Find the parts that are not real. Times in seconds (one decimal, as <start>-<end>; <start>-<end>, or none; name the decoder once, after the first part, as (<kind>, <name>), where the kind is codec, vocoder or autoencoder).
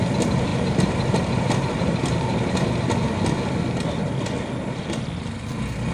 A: 0.5-2.8 (vocoder, BigVGAN v2)